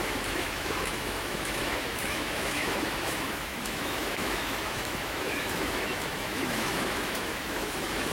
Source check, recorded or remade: remade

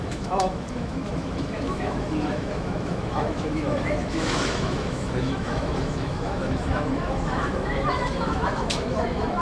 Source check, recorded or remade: remade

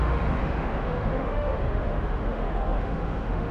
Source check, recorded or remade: remade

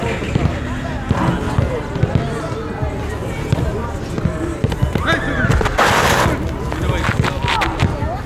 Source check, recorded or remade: recorded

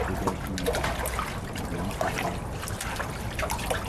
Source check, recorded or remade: recorded